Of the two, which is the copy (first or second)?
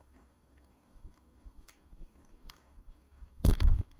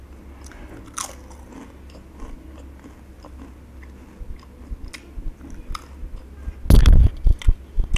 first